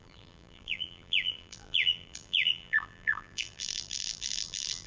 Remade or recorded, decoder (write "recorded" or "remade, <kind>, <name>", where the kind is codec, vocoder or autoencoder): remade, vocoder, BigVGAN v2